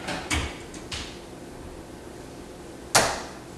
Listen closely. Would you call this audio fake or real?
real